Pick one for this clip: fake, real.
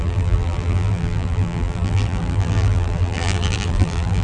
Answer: fake